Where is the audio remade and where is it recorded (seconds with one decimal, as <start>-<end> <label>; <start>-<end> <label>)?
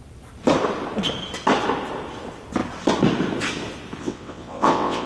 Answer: 0.0-4.0 recorded; 4.0-5.1 remade